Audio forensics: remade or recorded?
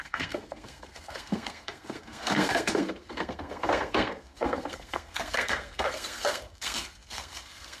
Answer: remade